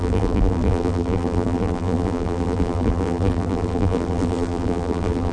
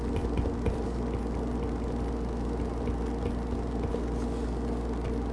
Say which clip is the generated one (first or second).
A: first